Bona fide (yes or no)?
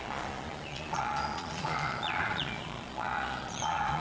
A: no